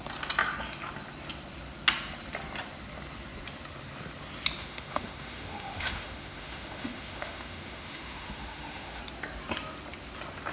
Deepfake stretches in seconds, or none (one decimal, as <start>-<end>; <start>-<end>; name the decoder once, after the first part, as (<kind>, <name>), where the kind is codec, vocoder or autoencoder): 4.6-9.0 (autoencoder, DAC-VAE)